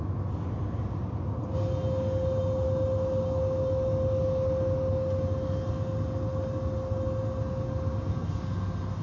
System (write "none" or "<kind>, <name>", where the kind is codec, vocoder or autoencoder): none